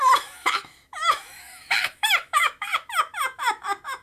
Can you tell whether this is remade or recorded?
remade